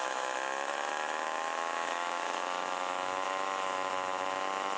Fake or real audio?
fake